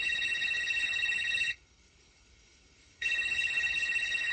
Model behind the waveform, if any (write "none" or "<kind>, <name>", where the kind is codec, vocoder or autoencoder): codec, HILCodec